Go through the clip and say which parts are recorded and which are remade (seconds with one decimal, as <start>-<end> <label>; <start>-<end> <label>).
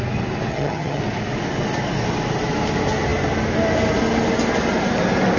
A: 0.0-0.5 recorded; 0.5-1.0 remade; 1.0-5.4 recorded